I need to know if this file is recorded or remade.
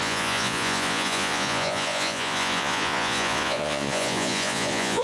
remade